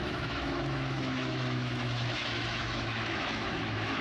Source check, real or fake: fake